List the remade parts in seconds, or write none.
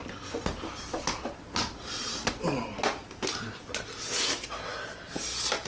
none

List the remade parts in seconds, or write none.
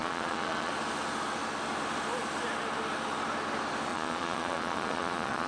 0.0-0.7 (vocoder, Vocos); 3.9-5.5